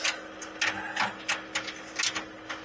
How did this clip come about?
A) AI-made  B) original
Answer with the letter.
B